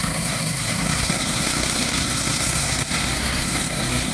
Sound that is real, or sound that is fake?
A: fake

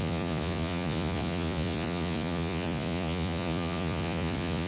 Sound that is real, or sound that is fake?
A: fake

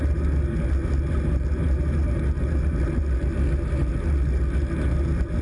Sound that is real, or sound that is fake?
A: real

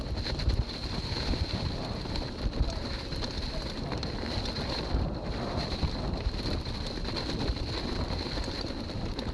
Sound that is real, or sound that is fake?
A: real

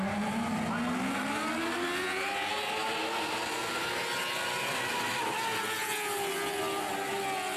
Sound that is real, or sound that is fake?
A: real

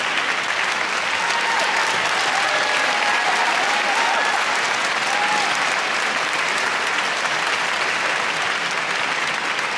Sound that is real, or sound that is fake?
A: real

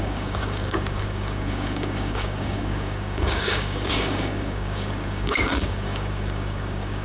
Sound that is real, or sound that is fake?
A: fake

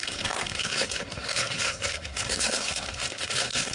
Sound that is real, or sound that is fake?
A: fake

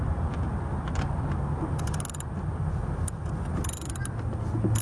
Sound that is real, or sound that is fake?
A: real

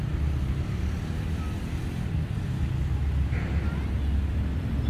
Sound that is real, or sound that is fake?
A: real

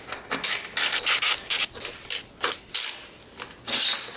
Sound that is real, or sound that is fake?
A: real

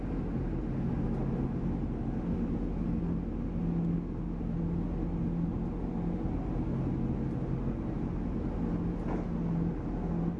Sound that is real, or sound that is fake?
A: real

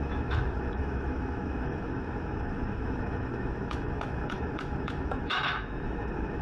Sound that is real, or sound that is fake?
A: fake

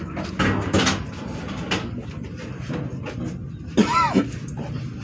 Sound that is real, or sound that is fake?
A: real